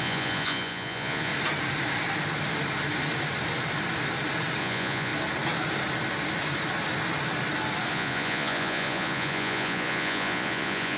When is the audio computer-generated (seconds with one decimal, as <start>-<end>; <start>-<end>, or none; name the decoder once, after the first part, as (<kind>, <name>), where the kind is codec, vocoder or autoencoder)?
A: 0.0-1.3 (vocoder, Vocos); 4.6-5.1; 7.9-11.0